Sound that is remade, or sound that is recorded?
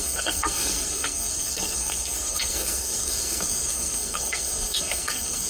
remade